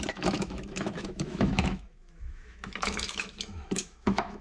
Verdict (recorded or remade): remade